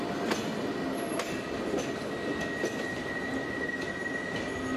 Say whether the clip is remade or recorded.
recorded